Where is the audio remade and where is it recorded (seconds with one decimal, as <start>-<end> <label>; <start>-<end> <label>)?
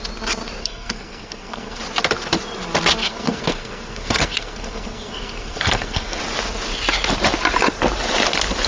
0.0-0.6 recorded; 0.6-1.8 remade; 1.8-3.0 recorded; 3.0-6.2 remade; 6.2-8.7 recorded